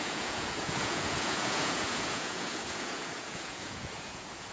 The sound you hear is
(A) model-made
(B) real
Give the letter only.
A